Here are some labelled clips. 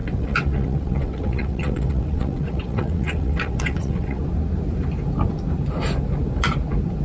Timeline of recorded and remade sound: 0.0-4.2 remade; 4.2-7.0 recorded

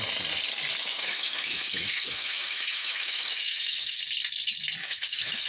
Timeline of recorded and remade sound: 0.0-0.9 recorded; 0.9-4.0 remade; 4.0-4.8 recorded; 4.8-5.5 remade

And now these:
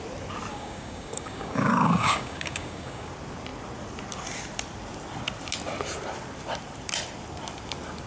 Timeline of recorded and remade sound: 0.0-0.5 recorded; 0.5-3.1 remade; 3.1-8.1 recorded

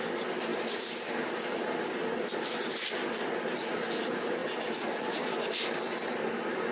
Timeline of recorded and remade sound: 0.0-6.7 recorded